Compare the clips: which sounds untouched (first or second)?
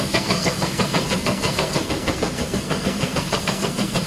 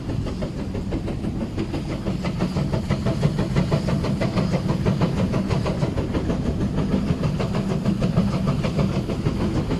second